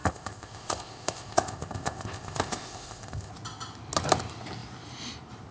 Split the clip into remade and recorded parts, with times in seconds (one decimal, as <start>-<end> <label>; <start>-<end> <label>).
0.0-3.3 remade; 3.3-5.5 recorded